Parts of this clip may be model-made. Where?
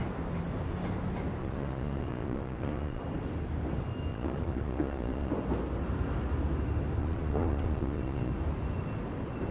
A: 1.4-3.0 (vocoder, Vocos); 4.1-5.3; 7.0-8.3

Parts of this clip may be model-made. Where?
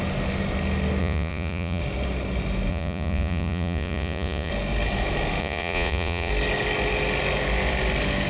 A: 1.0-1.8 (vocoder, Vocos); 2.7-4.5; 5.4-6.3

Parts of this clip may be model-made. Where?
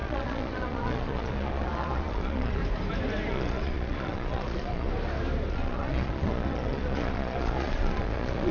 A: 0.0-2.6 (vocoder, Vocos); 3.3-4.9; 5.5-8.5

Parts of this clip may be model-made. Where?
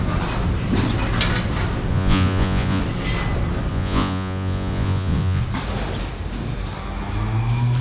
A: 1.9-2.8 (vocoder, Vocos); 3.7-5.4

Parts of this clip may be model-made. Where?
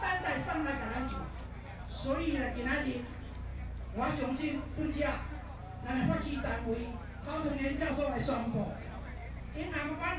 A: 3.5-7.9 (vocoder, Vocos)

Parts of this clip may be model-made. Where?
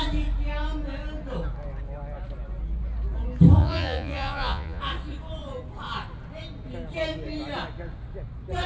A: 3.6-4.8 (vocoder, Vocos)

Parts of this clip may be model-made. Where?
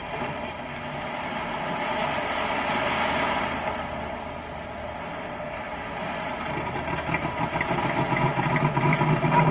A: none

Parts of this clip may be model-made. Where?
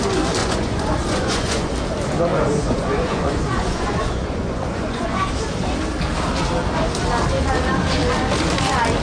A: 0.4-1.7 (vocoder, Vocos); 2.3-5.3